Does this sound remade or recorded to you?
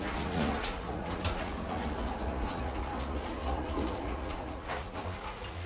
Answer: remade